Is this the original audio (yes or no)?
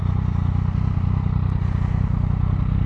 yes